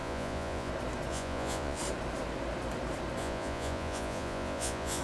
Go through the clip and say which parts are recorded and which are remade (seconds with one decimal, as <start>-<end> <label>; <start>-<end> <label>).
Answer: 0.0-0.7 remade; 0.7-1.1 recorded; 1.1-1.8 remade; 1.8-3.2 recorded; 3.2-5.0 remade